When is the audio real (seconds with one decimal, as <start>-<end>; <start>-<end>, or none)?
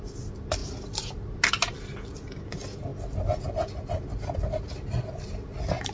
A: 0.0-5.9